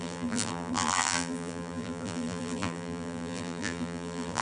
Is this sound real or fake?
fake